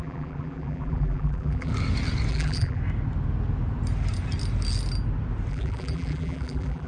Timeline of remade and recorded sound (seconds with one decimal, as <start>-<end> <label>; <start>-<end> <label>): 0.0-1.7 remade; 1.7-2.3 recorded; 2.3-2.8 remade; 2.8-5.5 recorded; 5.5-6.9 remade